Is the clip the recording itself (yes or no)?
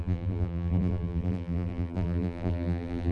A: no